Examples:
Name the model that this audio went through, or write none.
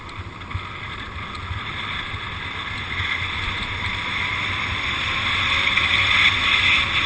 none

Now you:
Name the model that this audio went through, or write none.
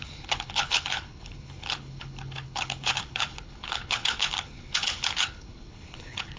codec, HILCodec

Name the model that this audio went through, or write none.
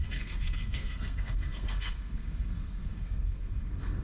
codec, SNAC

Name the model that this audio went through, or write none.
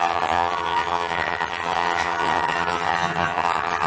vocoder, HiFi-GAN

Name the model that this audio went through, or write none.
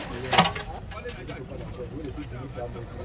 none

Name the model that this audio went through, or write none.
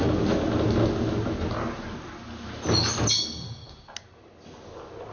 none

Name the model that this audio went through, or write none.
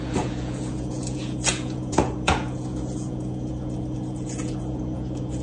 vocoder, Vocos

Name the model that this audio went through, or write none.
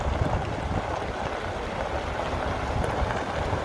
none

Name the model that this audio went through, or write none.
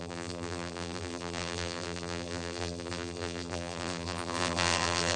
vocoder, BigVGAN v2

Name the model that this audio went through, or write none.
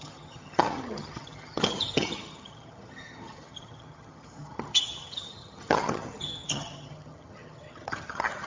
vocoder, HiFi-GAN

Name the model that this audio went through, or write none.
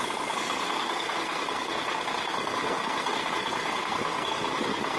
codec, SNAC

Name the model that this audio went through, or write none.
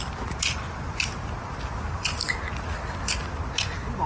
none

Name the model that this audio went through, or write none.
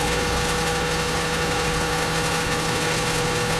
codec, HILCodec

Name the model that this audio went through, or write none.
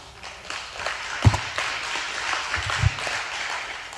none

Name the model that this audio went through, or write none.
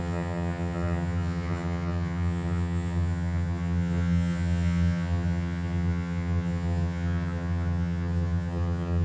vocoder, HiFi-GAN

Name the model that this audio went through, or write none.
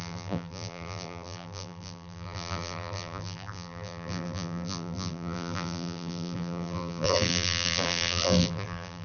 vocoder, BigVGAN v2